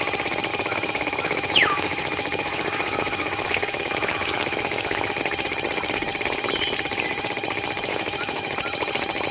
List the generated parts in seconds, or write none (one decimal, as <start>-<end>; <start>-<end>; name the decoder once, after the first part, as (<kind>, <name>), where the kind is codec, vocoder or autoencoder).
0.5-5.2 (autoencoder, DAC-VAE); 7.9-8.5